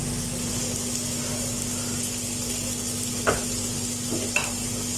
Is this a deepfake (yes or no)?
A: no